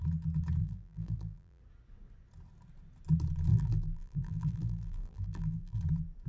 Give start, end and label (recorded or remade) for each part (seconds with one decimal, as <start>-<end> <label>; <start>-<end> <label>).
0.0-0.6 recorded; 0.6-1.6 remade; 1.6-3.5 recorded; 3.5-5.8 remade; 5.8-6.3 recorded